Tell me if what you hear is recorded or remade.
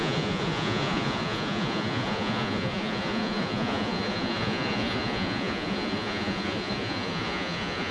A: remade